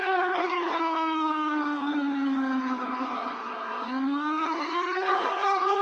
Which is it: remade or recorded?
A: remade